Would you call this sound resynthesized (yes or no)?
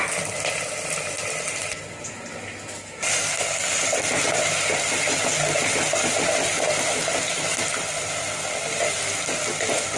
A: no